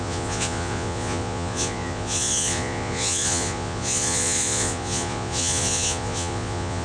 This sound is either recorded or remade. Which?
remade